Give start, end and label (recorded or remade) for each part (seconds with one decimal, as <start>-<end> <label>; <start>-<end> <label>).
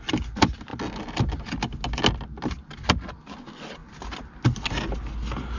0.0-3.8 recorded; 3.8-5.0 remade; 5.0-5.6 recorded